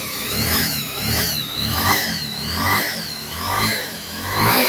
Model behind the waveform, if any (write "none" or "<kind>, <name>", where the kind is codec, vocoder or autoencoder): autoencoder, DAC-VAE